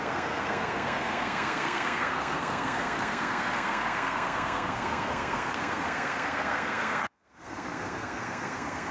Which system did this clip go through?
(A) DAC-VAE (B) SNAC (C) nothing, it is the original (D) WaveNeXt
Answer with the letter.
B